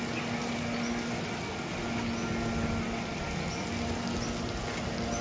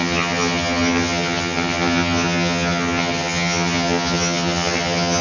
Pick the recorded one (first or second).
first